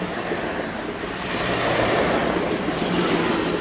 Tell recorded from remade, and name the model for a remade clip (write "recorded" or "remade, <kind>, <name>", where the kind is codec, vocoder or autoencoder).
recorded